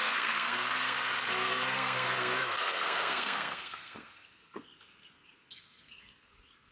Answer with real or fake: fake